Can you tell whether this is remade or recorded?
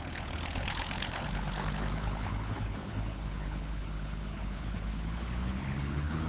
remade